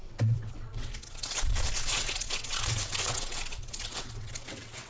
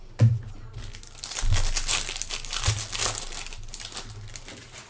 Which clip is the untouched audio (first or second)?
second